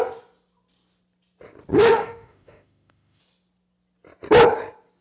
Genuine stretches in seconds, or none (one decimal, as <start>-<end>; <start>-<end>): 0.0-1.7; 3.2-5.0